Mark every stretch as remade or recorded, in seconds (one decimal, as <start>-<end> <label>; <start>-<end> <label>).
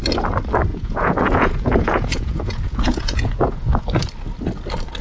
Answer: 0.0-0.7 recorded; 0.7-3.7 remade; 3.7-5.0 recorded